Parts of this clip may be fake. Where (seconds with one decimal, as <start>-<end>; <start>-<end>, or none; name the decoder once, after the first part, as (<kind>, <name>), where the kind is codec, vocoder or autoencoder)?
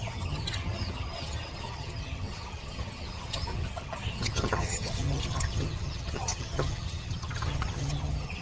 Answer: 0.0-8.4 (vocoder, HiFi-GAN)